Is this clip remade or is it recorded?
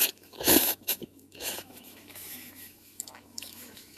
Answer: remade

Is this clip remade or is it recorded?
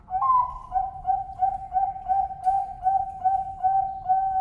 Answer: recorded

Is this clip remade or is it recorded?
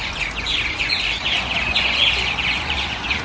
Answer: remade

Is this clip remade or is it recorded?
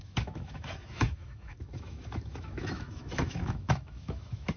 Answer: remade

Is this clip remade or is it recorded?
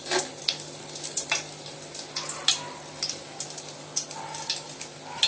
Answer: recorded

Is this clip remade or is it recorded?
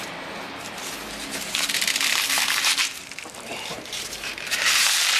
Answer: remade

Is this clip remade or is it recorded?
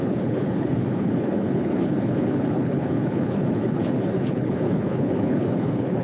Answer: remade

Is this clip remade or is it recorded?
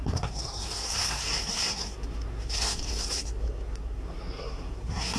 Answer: remade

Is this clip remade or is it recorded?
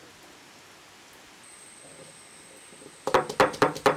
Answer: recorded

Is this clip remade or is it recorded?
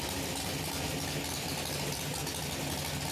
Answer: recorded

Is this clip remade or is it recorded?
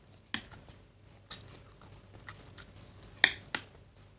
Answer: recorded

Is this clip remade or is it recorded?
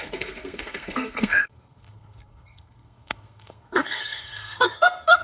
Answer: remade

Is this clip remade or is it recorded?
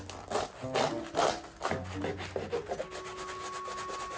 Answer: recorded